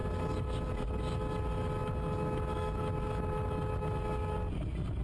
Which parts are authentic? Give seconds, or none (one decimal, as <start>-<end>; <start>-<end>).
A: 0.0-5.0